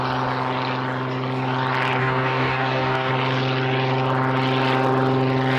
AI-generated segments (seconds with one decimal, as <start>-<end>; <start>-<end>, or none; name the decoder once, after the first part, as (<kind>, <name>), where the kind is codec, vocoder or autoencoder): 2.0-3.1 (codec, DAC)